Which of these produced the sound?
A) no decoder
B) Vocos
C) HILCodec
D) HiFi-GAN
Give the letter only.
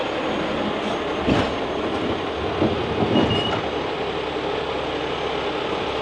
A